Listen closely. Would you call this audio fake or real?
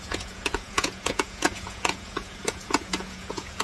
fake